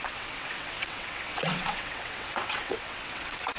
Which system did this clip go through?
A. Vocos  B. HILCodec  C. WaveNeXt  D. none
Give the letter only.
C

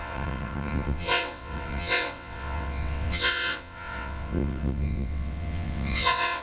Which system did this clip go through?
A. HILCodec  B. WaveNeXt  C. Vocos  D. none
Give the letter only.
B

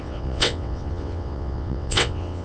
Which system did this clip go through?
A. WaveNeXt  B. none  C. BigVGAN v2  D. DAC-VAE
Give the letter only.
A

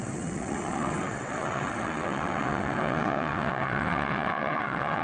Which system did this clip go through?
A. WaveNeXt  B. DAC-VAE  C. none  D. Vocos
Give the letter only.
A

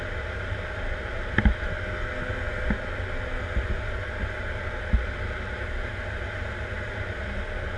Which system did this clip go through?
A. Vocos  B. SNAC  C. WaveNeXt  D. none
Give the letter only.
D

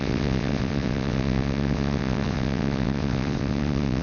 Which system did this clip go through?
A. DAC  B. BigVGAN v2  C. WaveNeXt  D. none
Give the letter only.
C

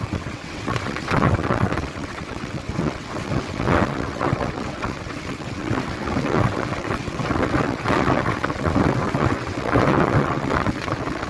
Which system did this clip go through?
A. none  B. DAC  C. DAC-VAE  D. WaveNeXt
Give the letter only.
D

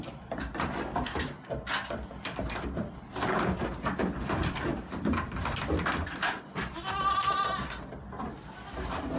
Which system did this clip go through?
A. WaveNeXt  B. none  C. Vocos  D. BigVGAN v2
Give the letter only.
B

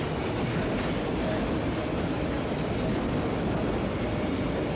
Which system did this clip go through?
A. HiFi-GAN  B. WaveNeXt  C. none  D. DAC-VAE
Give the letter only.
C